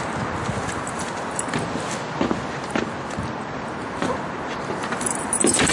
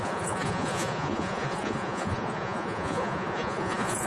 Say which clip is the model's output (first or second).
second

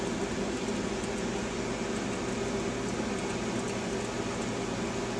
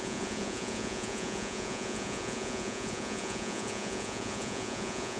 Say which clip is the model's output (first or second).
second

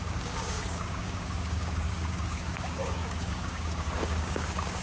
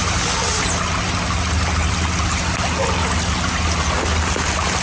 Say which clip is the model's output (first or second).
first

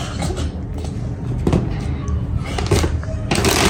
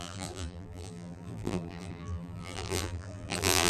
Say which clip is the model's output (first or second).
second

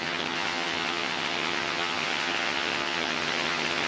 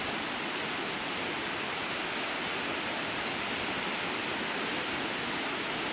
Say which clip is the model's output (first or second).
first